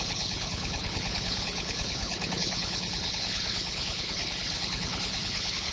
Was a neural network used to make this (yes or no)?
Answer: yes